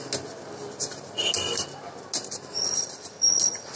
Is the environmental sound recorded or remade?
recorded